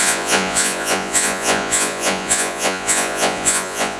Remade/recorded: remade